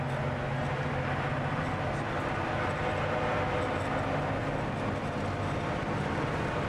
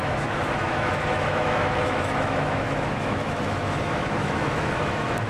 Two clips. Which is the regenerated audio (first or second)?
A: second